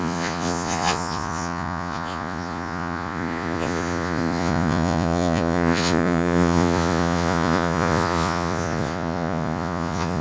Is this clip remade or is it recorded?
remade